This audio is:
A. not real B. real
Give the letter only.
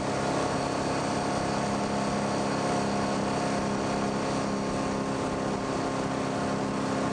B